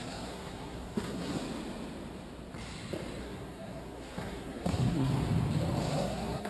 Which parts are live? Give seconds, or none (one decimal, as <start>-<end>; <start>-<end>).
1.4-3.2; 5.1-5.9